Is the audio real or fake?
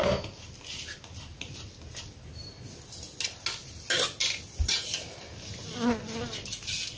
real